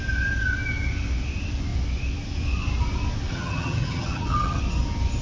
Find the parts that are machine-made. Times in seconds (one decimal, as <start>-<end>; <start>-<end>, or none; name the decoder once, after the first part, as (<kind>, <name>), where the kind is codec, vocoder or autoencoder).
3.3-4.6 (vocoder, HiFi-GAN)